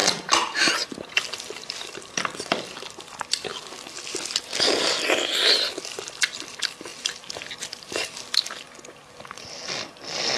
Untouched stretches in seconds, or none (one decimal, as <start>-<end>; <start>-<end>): 0.0-1.1; 3.5-5.7